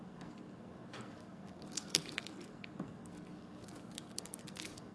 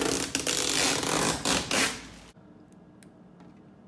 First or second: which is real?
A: second